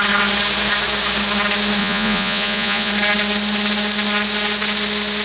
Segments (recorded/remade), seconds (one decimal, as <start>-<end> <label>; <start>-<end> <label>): 0.0-1.8 recorded; 1.8-2.9 remade; 2.9-5.2 recorded